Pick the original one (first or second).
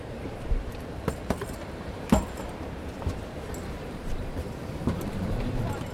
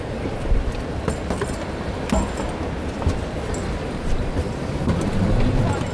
second